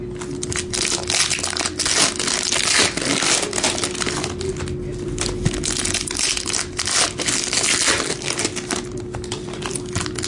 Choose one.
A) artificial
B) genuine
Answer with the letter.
B